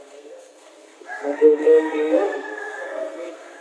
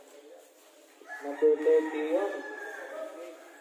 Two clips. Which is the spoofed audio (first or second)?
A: first